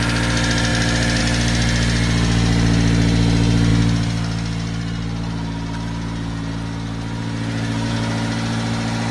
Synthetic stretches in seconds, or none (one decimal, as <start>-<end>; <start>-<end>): none